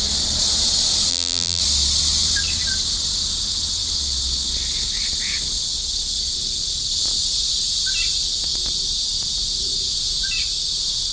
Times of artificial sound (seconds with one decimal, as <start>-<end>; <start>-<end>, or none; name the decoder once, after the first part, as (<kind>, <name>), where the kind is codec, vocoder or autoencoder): 1.1-1.6 (vocoder, BigVGAN v2)